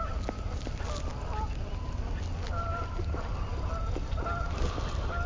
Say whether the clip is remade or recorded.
recorded